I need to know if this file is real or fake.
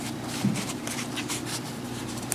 fake